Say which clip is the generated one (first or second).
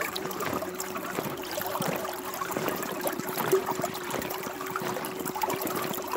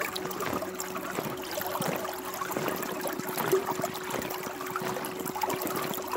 first